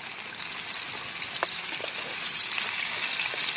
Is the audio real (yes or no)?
yes